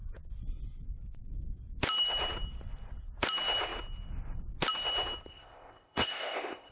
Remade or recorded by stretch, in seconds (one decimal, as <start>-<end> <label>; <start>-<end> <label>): 0.0-5.3 recorded; 5.3-6.7 remade